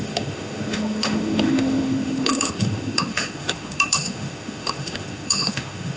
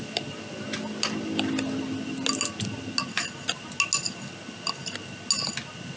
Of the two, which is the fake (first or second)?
first